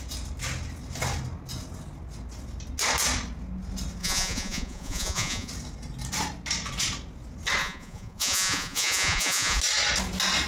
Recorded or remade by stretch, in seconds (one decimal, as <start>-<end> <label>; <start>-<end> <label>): 0.0-4.0 recorded; 4.0-5.5 remade; 5.5-7.6 recorded; 7.6-9.6 remade; 9.6-10.5 recorded